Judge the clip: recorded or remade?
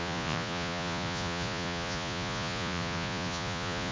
remade